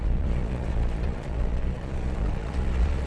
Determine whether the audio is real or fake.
fake